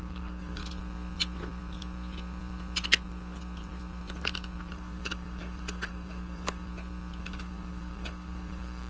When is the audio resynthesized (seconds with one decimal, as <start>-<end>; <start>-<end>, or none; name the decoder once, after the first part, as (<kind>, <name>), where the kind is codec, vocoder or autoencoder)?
0.0-0.6 (codec, DAC); 4.7-6.7; 7.2-8.9

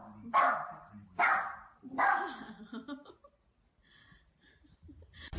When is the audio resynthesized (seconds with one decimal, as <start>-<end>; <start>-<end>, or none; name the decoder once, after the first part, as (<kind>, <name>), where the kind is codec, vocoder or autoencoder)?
none